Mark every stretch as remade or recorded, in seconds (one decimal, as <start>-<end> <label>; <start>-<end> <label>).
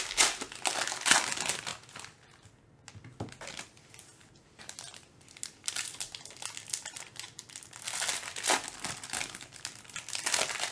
0.0-10.7 recorded